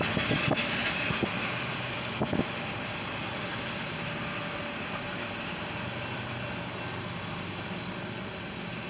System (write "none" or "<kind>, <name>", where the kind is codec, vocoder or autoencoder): none